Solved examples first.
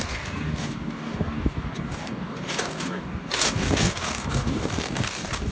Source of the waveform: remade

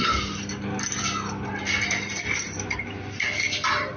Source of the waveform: recorded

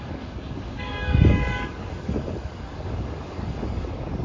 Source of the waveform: remade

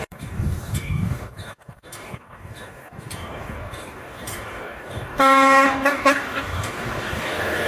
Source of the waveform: remade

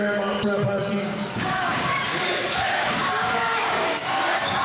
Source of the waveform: remade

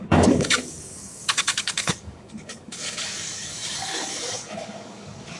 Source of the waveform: remade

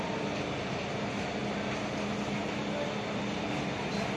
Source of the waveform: recorded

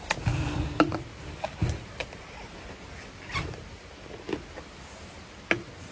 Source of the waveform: recorded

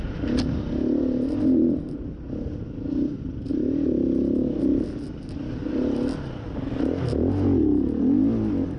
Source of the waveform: recorded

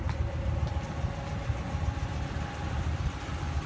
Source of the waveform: recorded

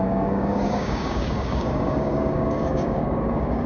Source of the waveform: remade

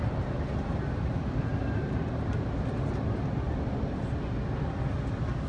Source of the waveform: recorded